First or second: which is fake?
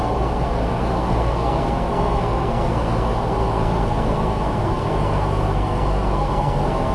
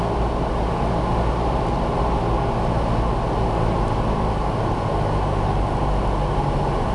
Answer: first